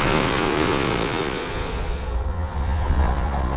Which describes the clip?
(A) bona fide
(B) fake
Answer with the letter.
B